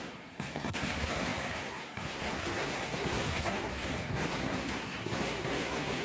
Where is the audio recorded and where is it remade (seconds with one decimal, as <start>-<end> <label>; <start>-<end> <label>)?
0.0-6.0 remade